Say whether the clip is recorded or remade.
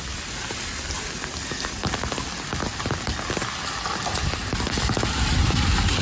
recorded